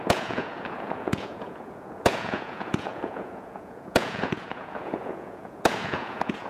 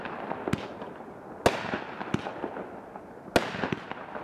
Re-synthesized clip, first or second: first